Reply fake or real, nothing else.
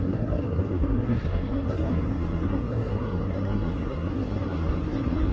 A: fake